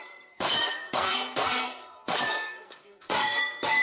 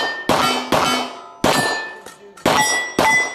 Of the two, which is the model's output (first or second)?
first